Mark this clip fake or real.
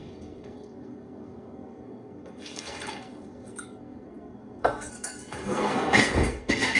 fake